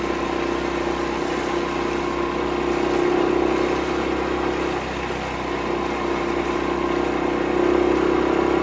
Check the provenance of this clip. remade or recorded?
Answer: recorded